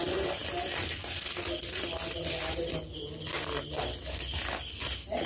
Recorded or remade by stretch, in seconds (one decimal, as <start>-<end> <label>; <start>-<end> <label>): 0.0-5.3 recorded